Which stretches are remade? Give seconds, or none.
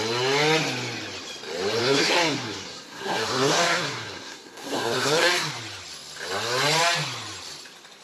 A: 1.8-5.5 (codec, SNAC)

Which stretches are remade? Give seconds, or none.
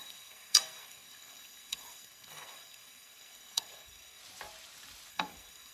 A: 0.0-4.2 (codec, SNAC); 5.1-5.7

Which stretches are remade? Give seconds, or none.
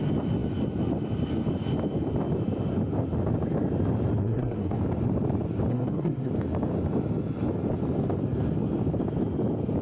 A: 4.2-4.8 (codec, SNAC); 5.7-6.3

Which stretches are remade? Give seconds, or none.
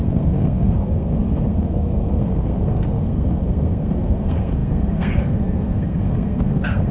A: 0.0-6.9 (codec, SNAC)